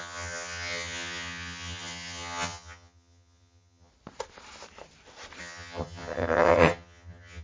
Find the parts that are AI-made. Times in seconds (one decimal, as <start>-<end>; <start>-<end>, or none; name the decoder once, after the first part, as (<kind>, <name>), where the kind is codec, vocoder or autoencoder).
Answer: 0.0-3.9 (vocoder, HiFi-GAN); 5.4-7.4